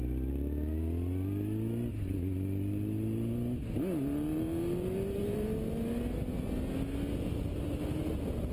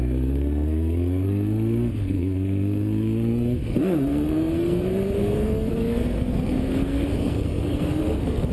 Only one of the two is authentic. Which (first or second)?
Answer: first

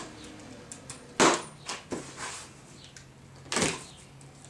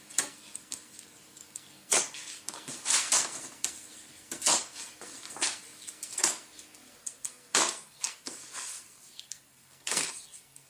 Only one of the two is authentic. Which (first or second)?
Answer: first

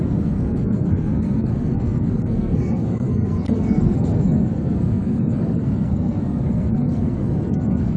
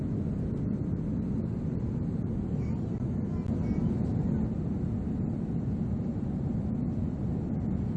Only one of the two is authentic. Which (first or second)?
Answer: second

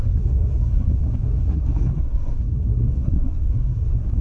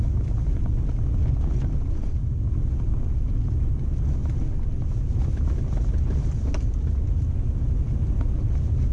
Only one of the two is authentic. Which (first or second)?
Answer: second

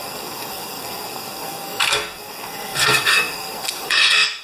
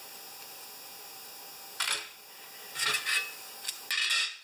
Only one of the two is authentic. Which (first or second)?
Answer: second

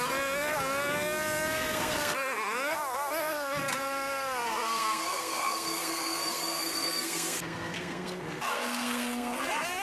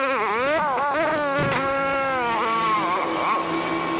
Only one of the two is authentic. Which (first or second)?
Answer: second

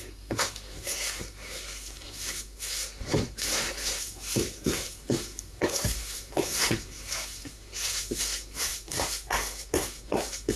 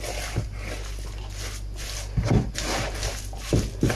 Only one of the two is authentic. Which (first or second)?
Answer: second